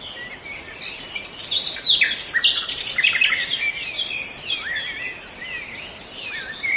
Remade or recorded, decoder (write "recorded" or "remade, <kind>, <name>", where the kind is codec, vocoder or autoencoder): recorded